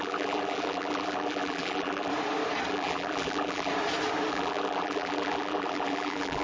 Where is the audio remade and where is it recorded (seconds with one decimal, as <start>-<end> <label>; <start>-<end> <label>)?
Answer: 0.0-2.1 remade; 2.1-2.7 recorded; 2.7-3.7 remade; 3.7-4.3 recorded; 4.3-6.4 remade